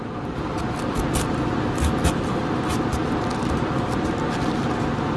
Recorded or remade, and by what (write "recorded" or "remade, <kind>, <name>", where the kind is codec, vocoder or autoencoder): recorded